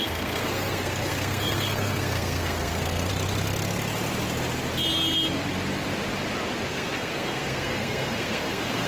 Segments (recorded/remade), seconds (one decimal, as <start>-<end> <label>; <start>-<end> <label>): 0.0-3.1 remade; 3.1-6.7 recorded; 6.7-8.9 remade